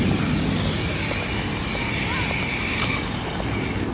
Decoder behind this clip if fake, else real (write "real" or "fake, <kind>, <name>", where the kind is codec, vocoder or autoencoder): real